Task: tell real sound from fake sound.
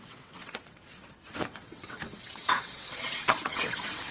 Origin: fake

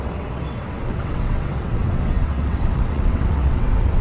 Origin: fake